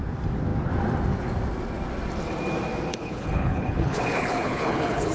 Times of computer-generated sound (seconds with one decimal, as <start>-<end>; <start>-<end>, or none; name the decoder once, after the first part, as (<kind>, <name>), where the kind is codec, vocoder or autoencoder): 2.9-5.1 (codec, HILCodec)